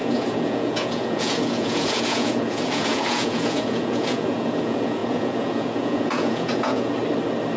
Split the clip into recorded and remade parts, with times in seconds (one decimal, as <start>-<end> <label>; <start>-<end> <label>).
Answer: 0.0-7.0 remade; 7.0-7.6 recorded